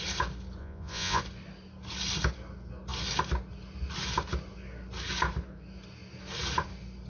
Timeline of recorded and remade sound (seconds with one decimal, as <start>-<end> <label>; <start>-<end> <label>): 0.0-0.6 recorded; 0.6-1.2 remade; 1.2-7.1 recorded